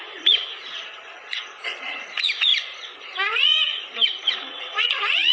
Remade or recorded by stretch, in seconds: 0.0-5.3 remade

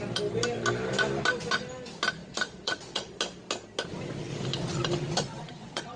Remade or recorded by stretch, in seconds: 0.0-2.2 recorded; 2.2-3.1 remade; 3.1-5.3 recorded; 5.3-6.0 remade

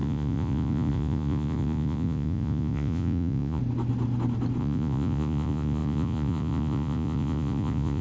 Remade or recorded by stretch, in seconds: 0.0-3.6 remade; 3.6-4.6 recorded; 4.6-8.0 remade

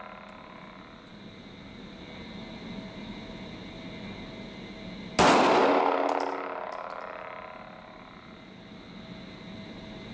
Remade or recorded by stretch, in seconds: 0.0-10.1 recorded

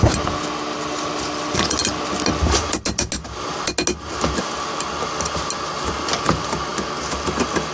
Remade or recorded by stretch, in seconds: 0.0-7.7 recorded

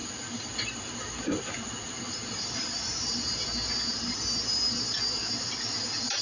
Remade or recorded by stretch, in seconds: 0.0-6.2 recorded

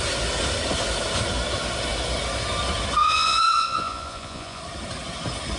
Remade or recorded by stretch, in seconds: 0.0-3.0 recorded; 3.0-4.6 remade; 4.6-5.6 recorded